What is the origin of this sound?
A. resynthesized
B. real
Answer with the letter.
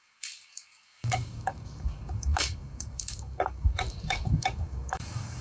A